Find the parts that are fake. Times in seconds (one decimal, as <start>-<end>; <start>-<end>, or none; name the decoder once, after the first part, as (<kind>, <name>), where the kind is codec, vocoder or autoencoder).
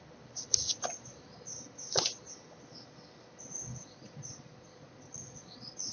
3.8-5.9 (vocoder, Vocos)